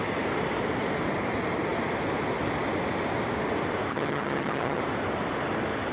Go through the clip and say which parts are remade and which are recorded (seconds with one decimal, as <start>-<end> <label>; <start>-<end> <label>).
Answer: 0.0-3.9 recorded; 3.9-4.8 remade; 4.8-5.9 recorded